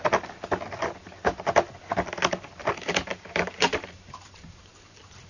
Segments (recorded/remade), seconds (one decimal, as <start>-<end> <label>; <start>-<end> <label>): 0.0-3.1 recorded; 3.1-4.7 remade; 4.7-5.3 recorded